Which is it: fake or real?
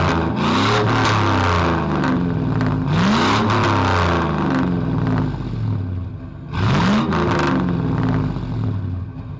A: real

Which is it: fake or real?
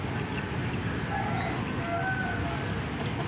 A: real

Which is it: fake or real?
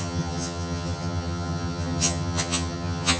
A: fake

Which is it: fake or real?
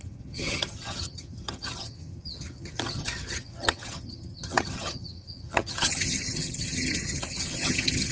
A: fake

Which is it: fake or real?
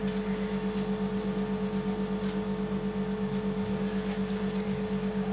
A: real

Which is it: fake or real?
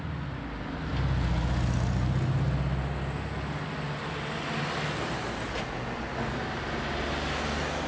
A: real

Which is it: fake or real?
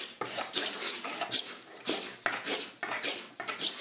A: real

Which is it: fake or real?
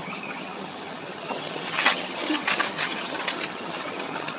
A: fake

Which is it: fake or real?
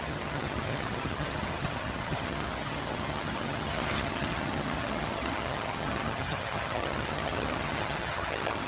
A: fake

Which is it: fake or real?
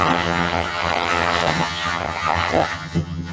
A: fake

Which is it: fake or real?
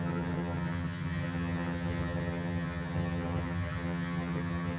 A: fake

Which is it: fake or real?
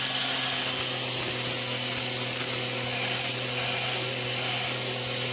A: real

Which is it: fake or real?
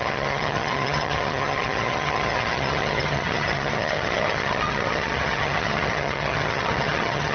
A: fake